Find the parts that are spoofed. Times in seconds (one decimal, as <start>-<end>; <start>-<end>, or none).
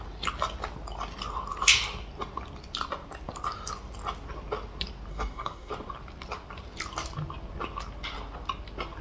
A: 5.1-5.7